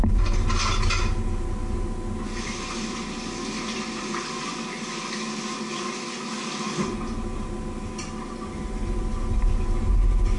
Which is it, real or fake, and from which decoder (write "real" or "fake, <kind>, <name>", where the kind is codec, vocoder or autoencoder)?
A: real